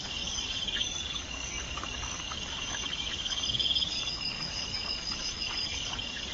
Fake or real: fake